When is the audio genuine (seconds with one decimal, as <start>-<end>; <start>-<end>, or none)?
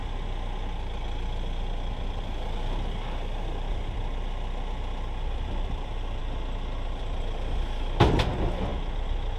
0.0-9.4